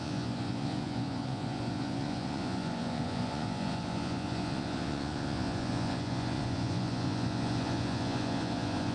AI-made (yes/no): yes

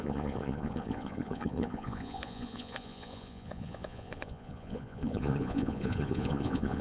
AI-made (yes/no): yes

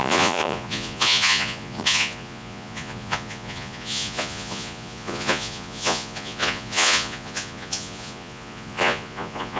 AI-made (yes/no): yes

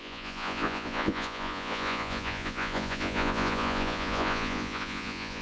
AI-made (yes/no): yes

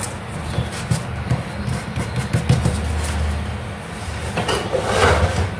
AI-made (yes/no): no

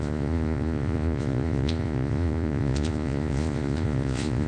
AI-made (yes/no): yes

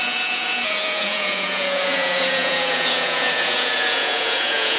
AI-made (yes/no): yes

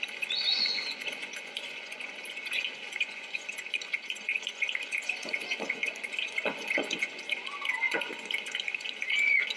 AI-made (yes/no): yes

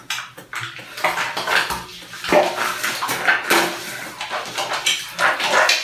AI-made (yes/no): no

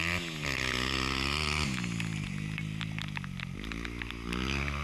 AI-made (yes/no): no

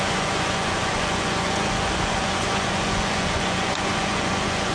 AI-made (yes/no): yes